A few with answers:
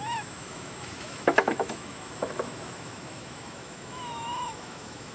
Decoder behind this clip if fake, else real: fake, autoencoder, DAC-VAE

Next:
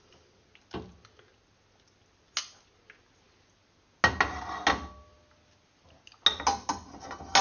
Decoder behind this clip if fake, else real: real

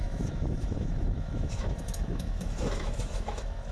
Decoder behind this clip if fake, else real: fake, autoencoder, DAC-VAE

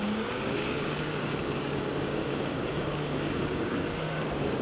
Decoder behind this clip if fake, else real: fake, codec, DAC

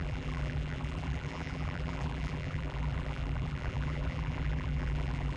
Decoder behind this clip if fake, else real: fake, vocoder, BigVGAN v2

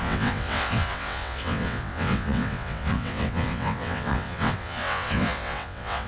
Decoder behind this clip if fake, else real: fake, vocoder, WaveNeXt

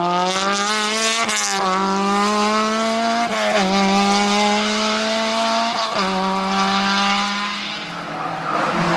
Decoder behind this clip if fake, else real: real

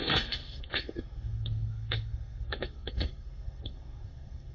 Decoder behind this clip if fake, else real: fake, codec, SNAC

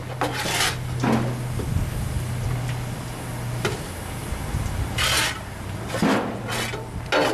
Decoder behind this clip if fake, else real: real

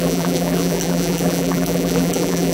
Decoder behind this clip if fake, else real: fake, vocoder, BigVGAN v2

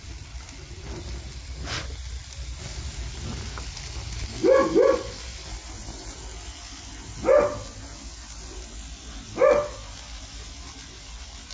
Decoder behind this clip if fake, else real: real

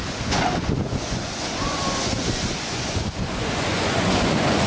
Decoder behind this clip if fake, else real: fake, vocoder, Vocos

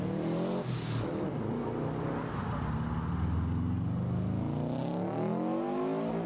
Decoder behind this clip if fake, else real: real